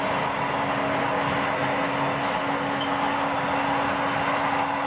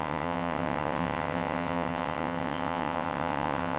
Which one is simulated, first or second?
second